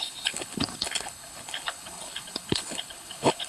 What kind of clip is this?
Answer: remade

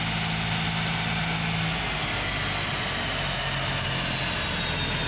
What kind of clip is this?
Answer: recorded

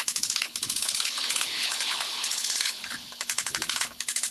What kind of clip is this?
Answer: remade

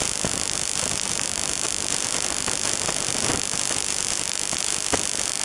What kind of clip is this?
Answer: recorded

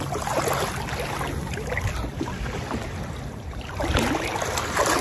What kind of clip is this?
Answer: recorded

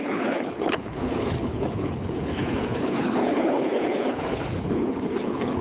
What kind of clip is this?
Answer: remade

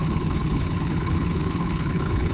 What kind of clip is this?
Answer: remade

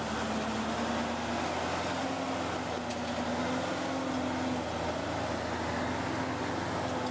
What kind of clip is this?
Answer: recorded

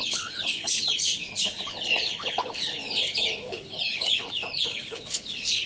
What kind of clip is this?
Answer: remade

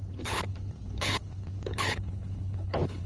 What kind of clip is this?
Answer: remade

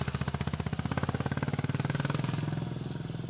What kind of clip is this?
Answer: recorded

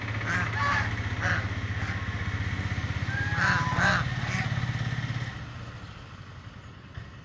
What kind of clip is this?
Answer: recorded